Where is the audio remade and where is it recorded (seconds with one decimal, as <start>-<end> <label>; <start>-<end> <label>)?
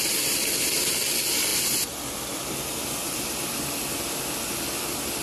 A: 0.0-1.5 recorded; 1.5-2.0 remade; 2.0-3.0 recorded; 3.0-3.5 remade; 3.5-5.2 recorded